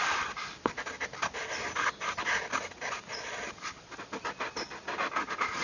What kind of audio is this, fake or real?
real